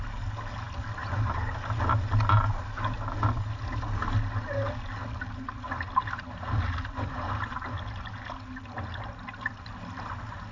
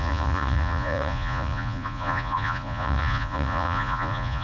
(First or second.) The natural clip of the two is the first